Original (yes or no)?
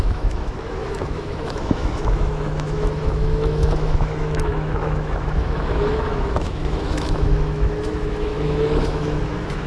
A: no